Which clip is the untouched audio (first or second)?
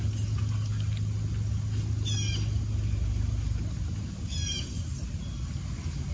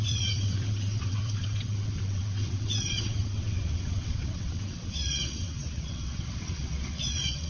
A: first